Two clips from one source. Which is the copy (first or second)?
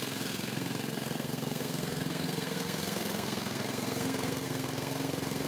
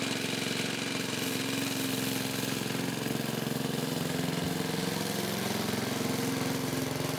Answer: first